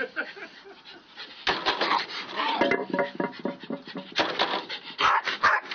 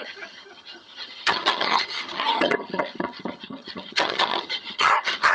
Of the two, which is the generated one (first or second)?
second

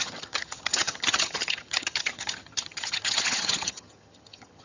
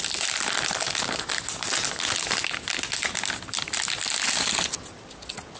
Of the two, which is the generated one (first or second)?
first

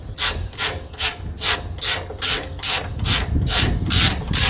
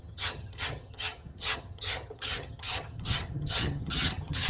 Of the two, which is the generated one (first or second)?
second